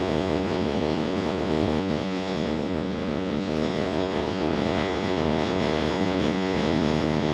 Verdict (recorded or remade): remade